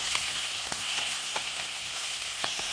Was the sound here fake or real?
fake